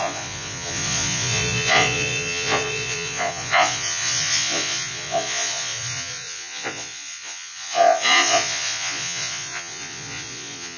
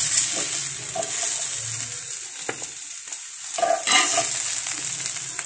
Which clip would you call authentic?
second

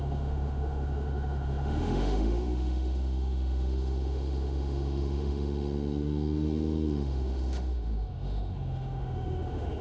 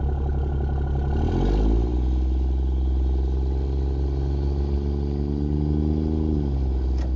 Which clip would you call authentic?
second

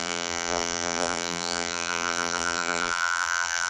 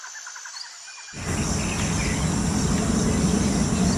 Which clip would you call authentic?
second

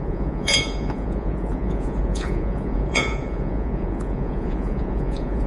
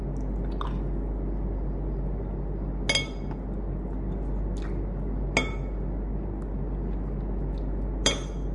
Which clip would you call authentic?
second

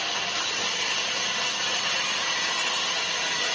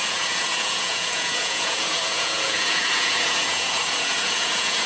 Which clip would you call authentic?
first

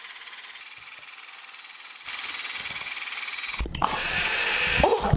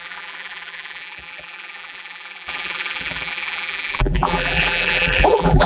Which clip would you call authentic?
first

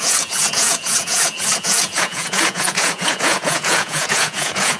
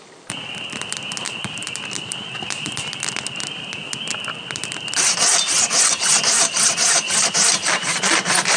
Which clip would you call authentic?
second